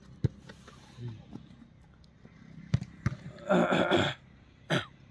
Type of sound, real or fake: real